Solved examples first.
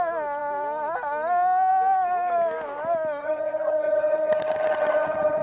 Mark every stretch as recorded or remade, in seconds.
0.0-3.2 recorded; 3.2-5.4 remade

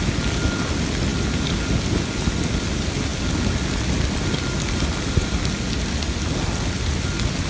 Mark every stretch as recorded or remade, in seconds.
0.0-7.5 recorded

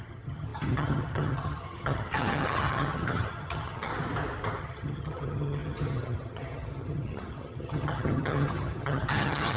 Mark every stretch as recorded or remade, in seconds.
0.0-3.9 remade; 3.9-4.6 recorded; 4.6-9.6 remade

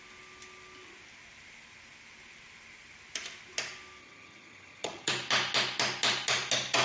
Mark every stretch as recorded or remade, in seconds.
0.0-4.0 recorded; 4.0-5.1 remade; 5.1-6.8 recorded

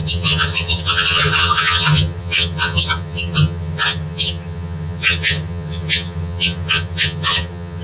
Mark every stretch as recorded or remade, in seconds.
0.0-7.8 remade

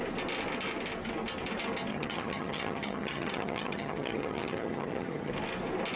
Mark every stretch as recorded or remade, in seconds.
0.0-1.9 recorded; 1.9-5.3 remade; 5.3-6.0 recorded